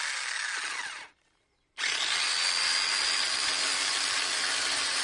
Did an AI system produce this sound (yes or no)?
no